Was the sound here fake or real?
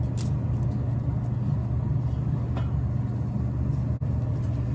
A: real